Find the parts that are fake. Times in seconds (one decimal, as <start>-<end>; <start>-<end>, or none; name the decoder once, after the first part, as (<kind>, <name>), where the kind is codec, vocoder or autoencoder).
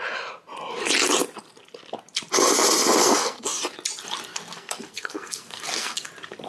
3.0-3.6 (codec, SNAC); 4.3-6.1